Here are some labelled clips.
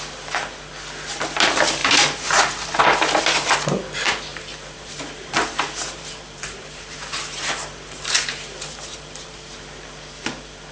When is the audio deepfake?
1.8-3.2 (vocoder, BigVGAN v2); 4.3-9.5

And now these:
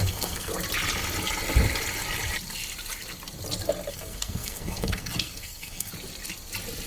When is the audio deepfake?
0.0-0.5 (codec, SNAC); 3.9-5.9